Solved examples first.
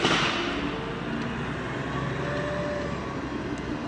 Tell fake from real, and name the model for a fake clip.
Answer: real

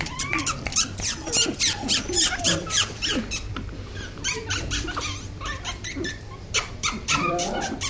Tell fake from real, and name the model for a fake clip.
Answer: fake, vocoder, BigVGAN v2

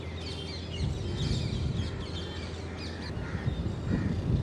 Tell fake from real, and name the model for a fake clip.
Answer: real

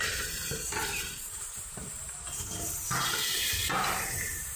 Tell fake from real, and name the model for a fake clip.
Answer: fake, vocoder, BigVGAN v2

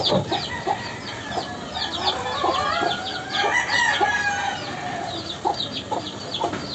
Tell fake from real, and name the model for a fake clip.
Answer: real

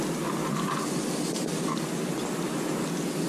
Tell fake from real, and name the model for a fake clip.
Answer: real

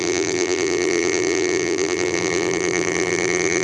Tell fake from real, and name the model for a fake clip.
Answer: fake, vocoder, BigVGAN v2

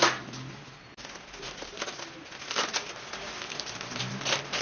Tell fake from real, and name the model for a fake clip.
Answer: real